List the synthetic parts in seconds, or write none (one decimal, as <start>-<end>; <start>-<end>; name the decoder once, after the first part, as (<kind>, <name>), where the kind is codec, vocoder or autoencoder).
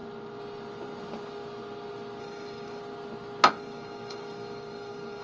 2.2-2.8 (codec, DAC); 3.5-5.2